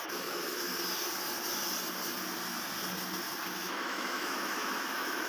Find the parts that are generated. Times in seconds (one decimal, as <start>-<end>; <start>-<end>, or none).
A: 0.0-0.7; 3.5-5.3